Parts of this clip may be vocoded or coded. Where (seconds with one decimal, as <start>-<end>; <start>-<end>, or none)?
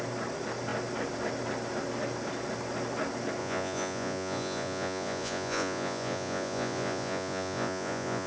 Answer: 3.4-8.3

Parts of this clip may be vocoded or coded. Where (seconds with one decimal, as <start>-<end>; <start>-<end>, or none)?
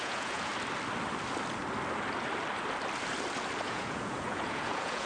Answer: 0.0-0.5; 3.6-5.1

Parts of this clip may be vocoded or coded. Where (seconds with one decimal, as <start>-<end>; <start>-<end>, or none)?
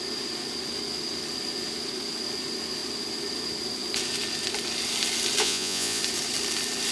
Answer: 5.4-6.0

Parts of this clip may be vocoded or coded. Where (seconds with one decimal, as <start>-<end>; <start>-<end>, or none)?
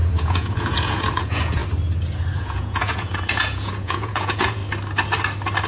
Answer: 0.0-1.6; 2.4-4.6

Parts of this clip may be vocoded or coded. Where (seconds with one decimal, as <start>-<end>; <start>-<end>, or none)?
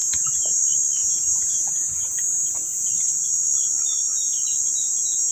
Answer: 0.0-0.6; 1.0-2.9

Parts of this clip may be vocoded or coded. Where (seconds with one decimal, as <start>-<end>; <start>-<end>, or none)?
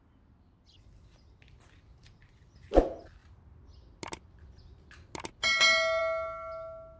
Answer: none